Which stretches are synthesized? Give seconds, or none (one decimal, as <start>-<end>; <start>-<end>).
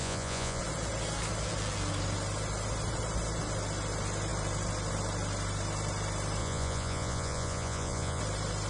0.0-0.6; 6.4-8.2